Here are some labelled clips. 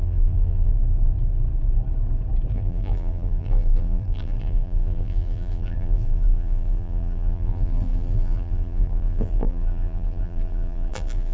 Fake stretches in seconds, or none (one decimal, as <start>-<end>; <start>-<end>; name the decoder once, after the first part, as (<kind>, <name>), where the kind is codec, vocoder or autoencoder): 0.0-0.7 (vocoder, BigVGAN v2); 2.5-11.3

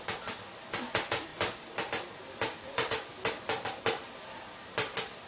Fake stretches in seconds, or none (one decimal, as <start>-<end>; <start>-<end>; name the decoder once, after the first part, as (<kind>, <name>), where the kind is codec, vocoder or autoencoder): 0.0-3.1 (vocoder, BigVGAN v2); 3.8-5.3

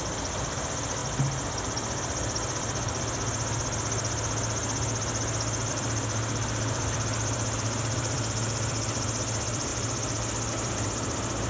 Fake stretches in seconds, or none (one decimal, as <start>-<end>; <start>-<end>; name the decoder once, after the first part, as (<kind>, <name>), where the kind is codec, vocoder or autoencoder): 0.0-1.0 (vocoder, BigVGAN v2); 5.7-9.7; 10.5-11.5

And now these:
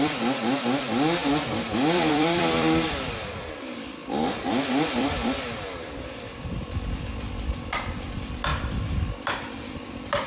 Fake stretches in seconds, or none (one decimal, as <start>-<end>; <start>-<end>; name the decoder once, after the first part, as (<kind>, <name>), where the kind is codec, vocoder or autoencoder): 0.0-10.3 (vocoder, BigVGAN v2)

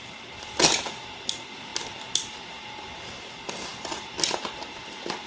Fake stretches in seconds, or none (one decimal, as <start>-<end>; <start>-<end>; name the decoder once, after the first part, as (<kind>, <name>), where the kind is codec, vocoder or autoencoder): 3.7-5.3 (vocoder, BigVGAN v2)

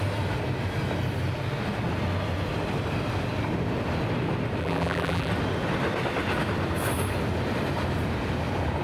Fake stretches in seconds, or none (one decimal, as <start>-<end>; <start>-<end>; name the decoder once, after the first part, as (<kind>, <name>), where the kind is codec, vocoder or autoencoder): 4.6-5.3 (vocoder, BigVGAN v2)